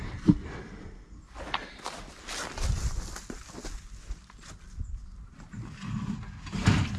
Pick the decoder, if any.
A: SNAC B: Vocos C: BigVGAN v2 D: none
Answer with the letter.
D